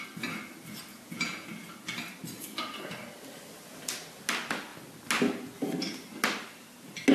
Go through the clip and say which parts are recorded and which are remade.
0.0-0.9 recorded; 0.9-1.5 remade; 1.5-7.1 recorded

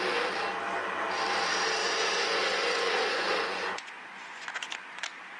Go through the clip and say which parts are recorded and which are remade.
0.0-1.8 recorded; 1.8-5.0 remade; 5.0-5.4 recorded

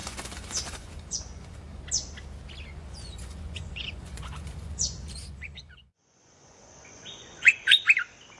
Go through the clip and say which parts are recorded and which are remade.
0.0-1.8 remade; 1.8-2.8 recorded; 2.8-7.8 remade; 7.8-8.4 recorded

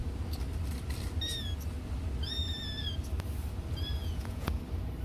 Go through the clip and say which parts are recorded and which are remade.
0.0-4.0 recorded; 4.0-4.6 remade; 4.6-5.0 recorded

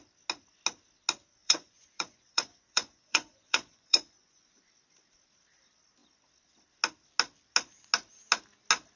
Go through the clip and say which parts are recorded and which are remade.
0.0-1.4 recorded; 1.4-4.4 remade; 4.4-9.0 recorded

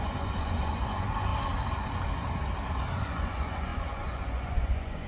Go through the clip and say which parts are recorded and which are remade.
0.0-1.3 remade; 1.3-3.0 recorded; 3.0-5.1 remade

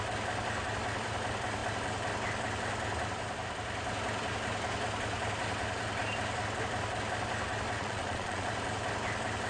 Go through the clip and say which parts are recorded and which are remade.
0.0-7.8 recorded; 7.8-8.5 remade; 8.5-9.5 recorded

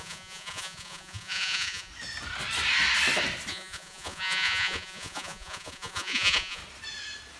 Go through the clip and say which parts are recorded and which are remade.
0.0-1.9 remade; 1.9-3.5 recorded; 3.5-6.6 remade; 6.6-7.4 recorded